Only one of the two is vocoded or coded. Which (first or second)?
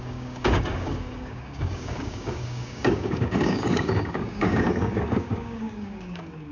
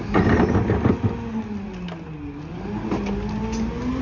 first